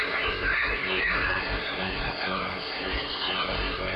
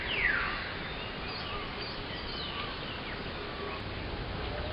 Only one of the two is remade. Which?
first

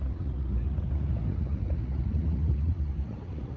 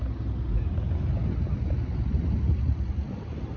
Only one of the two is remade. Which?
first